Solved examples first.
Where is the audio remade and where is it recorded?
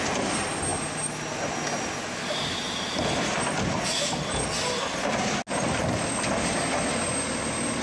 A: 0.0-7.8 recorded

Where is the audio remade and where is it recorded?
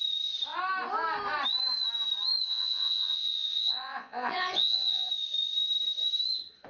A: 0.0-2.5 recorded; 2.5-5.1 remade; 5.1-6.7 recorded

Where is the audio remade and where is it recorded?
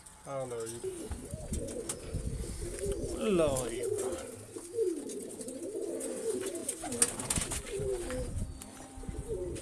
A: 0.0-9.6 recorded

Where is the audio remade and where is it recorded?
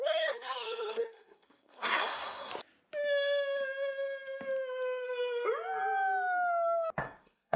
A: 0.0-2.5 remade; 2.5-7.0 recorded; 7.0-7.6 remade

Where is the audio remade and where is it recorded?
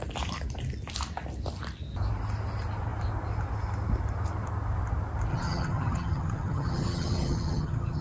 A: 0.0-5.3 recorded; 5.3-8.0 remade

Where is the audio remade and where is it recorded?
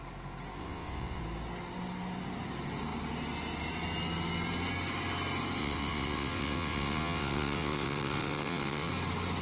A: 0.0-0.6 recorded; 0.6-1.2 remade; 1.2-5.6 recorded; 5.6-8.9 remade; 8.9-9.4 recorded